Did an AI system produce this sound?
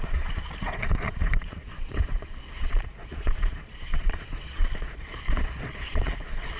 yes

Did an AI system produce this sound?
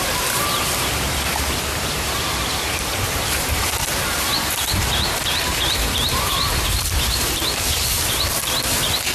yes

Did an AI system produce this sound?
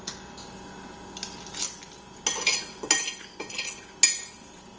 no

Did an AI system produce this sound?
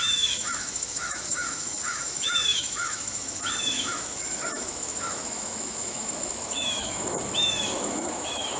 yes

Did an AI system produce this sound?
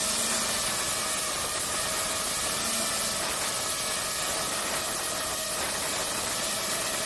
no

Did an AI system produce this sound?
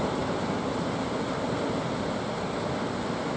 no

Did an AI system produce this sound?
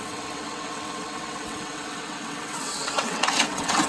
yes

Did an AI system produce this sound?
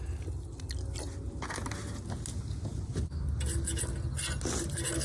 no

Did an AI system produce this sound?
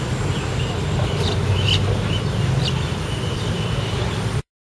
no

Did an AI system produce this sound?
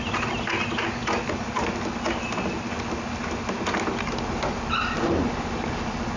no